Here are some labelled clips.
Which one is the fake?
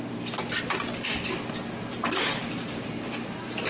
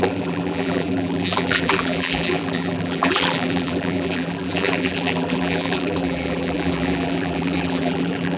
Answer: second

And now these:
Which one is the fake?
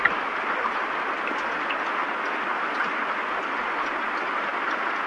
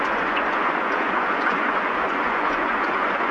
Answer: second